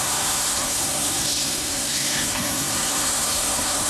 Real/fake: fake